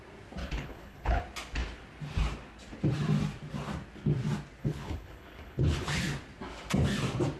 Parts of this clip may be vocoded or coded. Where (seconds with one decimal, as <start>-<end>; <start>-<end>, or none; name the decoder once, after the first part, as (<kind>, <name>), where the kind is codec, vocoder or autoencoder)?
0.4-1.2 (codec, HILCodec); 4.6-6.0